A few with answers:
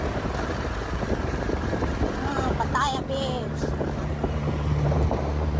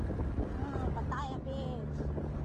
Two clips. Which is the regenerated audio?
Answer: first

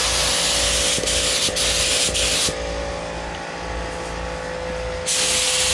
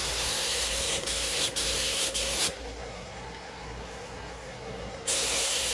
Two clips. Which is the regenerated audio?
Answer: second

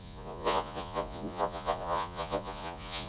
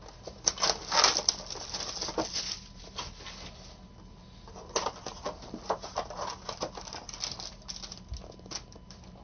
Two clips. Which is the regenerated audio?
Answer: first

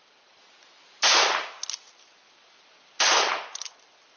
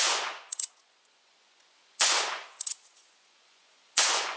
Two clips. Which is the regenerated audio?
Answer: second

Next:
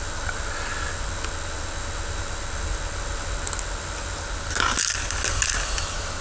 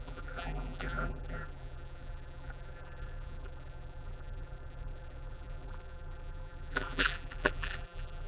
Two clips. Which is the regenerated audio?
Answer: second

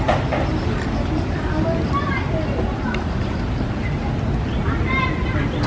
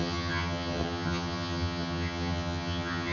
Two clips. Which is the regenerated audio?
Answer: second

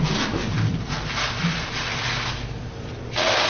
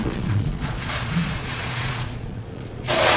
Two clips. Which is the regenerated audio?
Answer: second